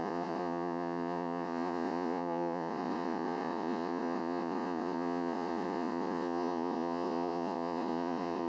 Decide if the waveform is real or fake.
fake